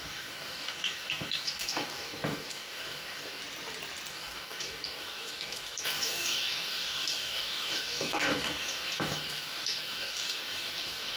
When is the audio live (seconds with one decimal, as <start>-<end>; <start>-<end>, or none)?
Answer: 3.4-4.1